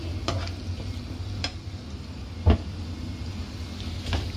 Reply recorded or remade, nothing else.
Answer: recorded